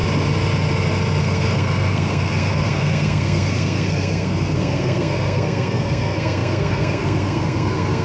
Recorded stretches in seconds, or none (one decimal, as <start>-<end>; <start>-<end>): 0.0-1.2